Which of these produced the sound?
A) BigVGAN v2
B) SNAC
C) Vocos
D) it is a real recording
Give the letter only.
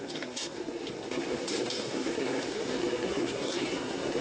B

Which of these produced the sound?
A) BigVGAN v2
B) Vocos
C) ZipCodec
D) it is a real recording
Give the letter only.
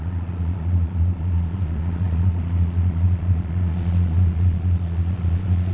B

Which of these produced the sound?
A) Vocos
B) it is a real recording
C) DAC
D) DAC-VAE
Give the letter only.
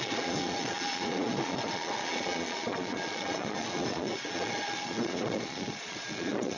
A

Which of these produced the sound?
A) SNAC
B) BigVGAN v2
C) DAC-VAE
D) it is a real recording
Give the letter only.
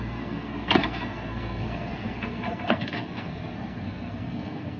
A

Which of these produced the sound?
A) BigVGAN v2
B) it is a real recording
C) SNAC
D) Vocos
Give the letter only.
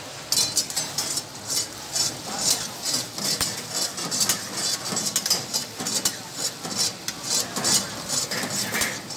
B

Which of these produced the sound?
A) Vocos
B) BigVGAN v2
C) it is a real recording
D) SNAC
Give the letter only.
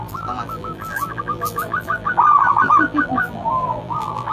B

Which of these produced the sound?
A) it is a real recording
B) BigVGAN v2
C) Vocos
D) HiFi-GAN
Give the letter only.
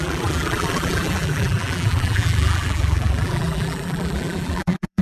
B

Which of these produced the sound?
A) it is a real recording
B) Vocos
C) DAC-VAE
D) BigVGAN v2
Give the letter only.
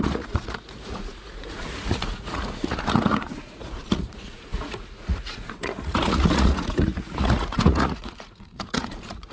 B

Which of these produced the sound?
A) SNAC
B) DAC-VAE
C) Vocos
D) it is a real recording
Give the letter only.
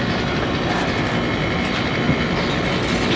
D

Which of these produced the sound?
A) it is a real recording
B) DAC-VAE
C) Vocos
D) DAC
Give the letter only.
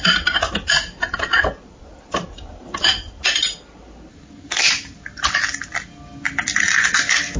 A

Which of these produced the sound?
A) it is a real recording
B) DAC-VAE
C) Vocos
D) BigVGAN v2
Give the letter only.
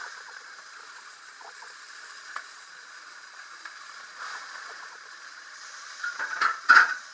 C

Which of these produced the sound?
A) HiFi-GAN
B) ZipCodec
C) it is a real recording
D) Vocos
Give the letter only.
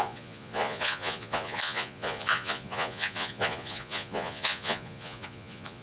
D